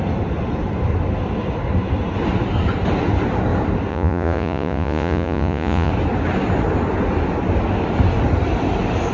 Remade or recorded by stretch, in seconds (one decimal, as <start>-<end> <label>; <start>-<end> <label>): 0.0-3.9 recorded; 3.9-5.9 remade; 5.9-9.1 recorded